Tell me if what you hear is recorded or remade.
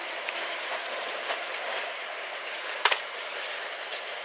remade